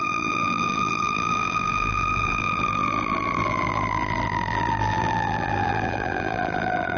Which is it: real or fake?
fake